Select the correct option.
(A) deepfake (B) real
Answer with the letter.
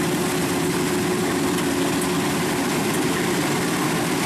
B